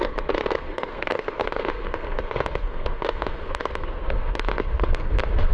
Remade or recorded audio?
remade